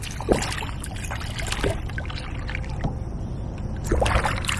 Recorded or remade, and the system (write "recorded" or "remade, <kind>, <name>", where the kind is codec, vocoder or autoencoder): recorded